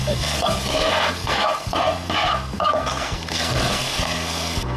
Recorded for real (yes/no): no